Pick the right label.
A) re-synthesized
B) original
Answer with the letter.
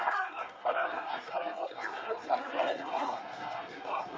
A